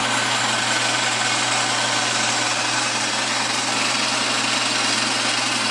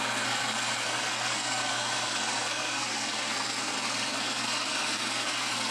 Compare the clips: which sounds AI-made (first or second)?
second